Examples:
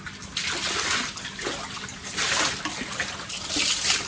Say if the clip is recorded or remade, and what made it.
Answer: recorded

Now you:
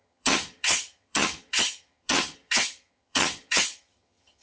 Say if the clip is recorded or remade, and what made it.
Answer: remade, vocoder, HiFi-GAN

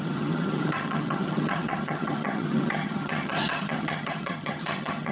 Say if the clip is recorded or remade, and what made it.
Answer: remade, vocoder, HiFi-GAN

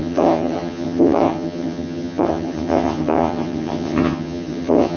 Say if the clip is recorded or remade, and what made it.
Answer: remade, vocoder, HiFi-GAN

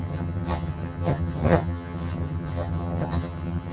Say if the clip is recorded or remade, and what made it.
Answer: remade, vocoder, HiFi-GAN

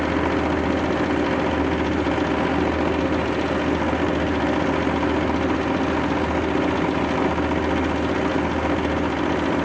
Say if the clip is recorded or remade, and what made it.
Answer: recorded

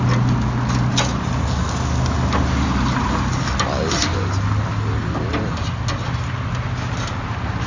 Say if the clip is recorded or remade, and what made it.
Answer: recorded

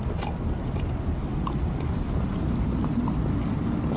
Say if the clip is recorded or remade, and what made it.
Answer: recorded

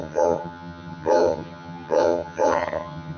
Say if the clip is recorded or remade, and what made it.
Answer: remade, vocoder, HiFi-GAN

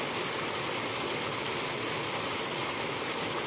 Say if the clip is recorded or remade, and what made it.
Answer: recorded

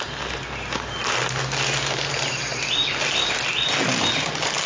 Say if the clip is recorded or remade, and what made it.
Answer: recorded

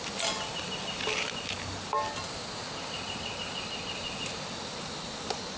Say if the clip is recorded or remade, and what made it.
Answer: recorded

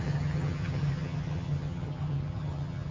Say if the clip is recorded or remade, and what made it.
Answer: remade, vocoder, HiFi-GAN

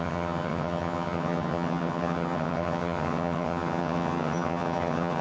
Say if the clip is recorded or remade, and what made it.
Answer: remade, vocoder, HiFi-GAN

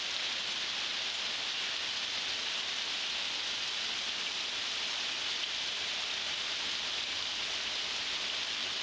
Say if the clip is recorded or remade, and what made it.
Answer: recorded